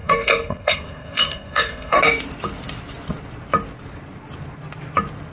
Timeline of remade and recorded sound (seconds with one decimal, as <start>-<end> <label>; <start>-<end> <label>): 0.0-2.0 remade; 2.0-5.3 recorded